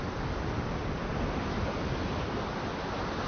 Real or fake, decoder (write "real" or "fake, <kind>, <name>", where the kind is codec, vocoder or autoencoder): real